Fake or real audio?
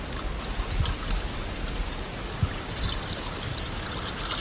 real